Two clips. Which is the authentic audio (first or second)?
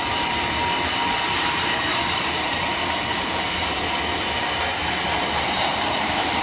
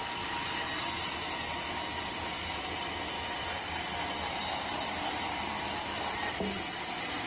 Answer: second